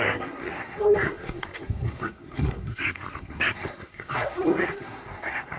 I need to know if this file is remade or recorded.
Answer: remade